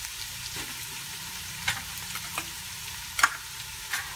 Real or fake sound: fake